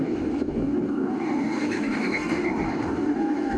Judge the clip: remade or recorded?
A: remade